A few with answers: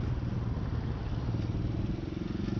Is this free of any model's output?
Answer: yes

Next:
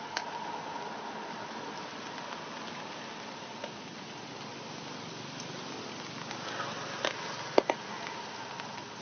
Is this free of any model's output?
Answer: yes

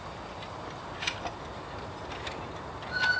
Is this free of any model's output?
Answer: yes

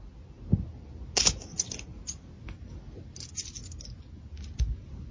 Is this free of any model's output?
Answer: yes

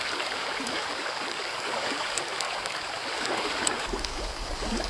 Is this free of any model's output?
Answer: no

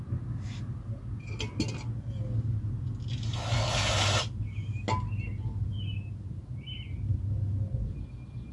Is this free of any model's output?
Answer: yes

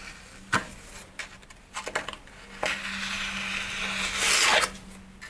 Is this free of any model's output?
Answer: yes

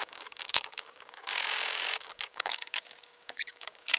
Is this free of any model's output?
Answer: no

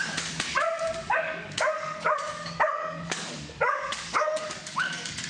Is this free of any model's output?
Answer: no